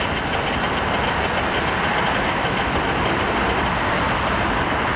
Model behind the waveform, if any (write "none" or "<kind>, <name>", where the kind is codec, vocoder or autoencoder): none